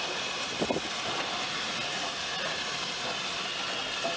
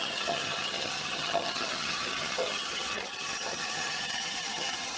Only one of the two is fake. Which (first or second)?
second